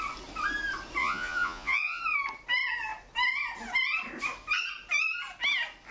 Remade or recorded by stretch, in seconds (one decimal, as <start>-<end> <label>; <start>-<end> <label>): 0.0-1.0 recorded; 1.0-2.0 remade; 2.0-5.9 recorded